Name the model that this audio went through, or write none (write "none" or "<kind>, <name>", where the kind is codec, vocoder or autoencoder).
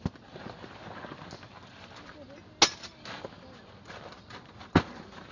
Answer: none